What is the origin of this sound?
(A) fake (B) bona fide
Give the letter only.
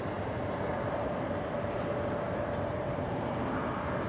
B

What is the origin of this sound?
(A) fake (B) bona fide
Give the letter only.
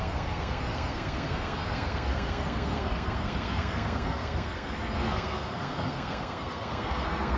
A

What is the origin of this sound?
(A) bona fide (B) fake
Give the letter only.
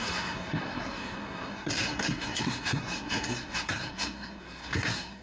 B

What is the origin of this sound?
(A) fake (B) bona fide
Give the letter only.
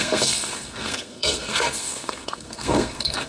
A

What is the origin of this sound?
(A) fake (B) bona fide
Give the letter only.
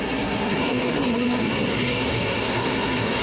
A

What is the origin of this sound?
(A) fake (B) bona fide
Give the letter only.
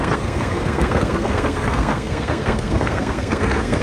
A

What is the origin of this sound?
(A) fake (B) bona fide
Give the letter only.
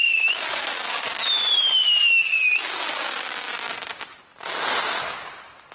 B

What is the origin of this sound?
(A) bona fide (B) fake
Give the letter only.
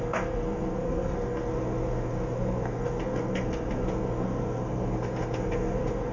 B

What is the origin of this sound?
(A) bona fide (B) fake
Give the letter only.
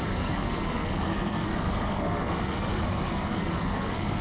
B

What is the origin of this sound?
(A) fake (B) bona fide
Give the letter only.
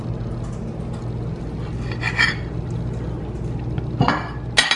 B